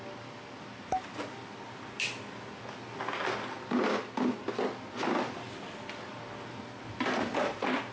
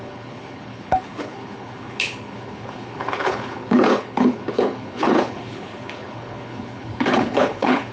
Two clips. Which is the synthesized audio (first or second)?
second